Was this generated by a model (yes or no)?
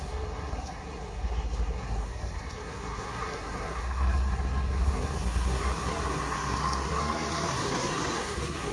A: yes